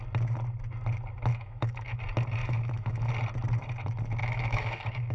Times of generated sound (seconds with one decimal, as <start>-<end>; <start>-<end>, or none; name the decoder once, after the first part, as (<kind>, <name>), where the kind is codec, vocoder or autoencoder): 1.3-2.0 (autoencoder, DAC-VAE); 2.4-3.1; 4.2-5.1